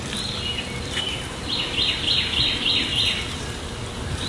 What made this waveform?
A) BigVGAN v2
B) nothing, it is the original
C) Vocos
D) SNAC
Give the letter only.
A